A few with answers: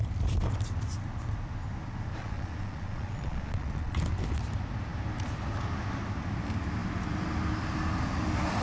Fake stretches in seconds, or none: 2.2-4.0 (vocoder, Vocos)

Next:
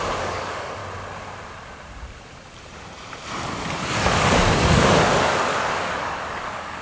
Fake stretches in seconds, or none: 0.0-0.8 (codec, DAC); 3.5-6.8

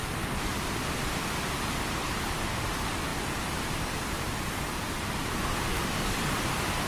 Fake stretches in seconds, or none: 5.7-6.2 (codec, DAC)

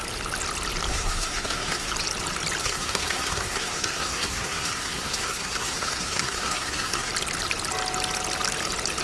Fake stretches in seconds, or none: 0.9-1.9 (codec, SNAC); 2.6-7.1

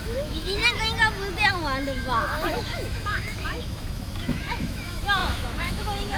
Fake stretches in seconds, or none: 0.0-0.6 (autoencoder, DAC-VAE); 1.5-6.2

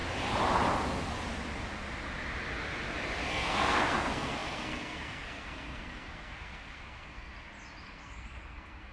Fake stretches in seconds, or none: 3.3-7.3 (codec, SNAC); 7.8-8.9